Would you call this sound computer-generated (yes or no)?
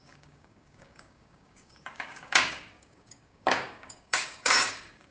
yes